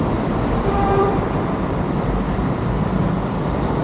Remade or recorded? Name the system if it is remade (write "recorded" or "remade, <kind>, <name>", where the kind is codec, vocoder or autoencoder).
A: remade, vocoder, BigVGAN v2